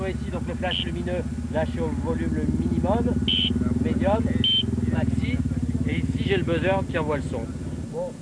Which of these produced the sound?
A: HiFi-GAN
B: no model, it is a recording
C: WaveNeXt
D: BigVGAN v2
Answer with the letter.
B